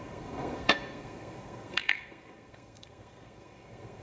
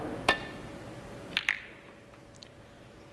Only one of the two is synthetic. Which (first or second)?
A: first